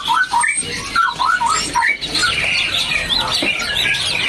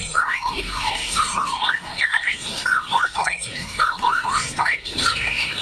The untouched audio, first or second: first